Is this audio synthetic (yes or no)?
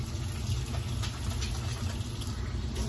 no